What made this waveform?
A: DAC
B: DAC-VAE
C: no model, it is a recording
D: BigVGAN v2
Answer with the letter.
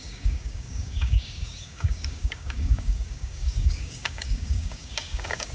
A